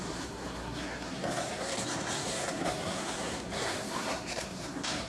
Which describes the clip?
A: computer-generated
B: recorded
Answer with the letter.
A